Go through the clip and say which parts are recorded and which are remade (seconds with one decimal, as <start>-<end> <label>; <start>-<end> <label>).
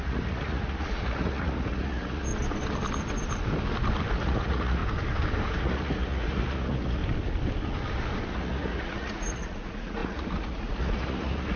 0.0-2.3 remade; 2.3-4.2 recorded; 4.2-4.8 remade; 4.8-5.6 recorded; 5.6-7.0 remade; 7.0-8.3 recorded; 8.3-11.6 remade